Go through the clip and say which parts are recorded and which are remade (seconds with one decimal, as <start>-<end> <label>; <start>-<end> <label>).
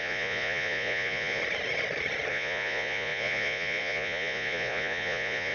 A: 0.0-1.4 remade; 1.4-2.3 recorded; 2.3-5.5 remade